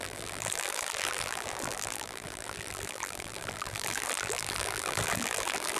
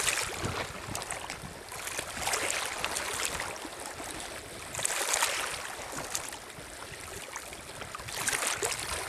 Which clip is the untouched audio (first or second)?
second